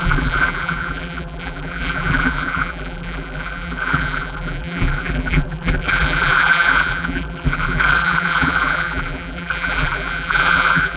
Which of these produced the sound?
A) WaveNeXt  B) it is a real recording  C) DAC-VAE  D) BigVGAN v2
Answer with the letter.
D